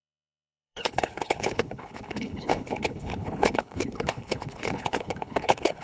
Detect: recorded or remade remade